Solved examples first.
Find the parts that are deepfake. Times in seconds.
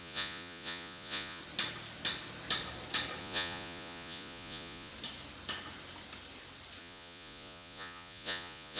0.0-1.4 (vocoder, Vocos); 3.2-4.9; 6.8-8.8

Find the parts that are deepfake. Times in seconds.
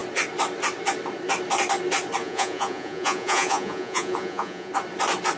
2.2-4.7 (vocoder, Vocos)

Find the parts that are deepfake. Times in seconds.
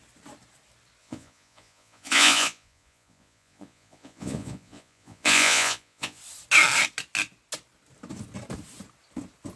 1.0-6.2 (vocoder, Vocos)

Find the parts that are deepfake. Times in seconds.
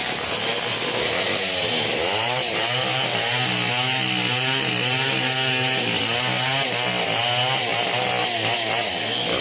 none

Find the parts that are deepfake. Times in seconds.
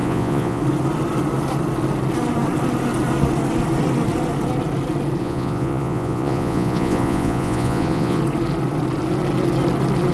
0.0-0.6 (vocoder, Vocos); 5.2-8.2